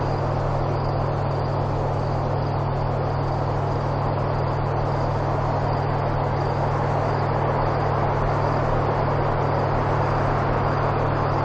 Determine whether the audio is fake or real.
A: real